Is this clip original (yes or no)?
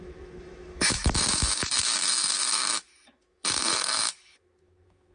no